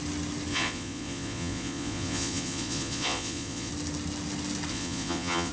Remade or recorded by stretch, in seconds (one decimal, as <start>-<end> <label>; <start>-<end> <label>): 0.0-0.5 recorded; 0.5-3.7 remade; 3.7-4.7 recorded; 4.7-5.5 remade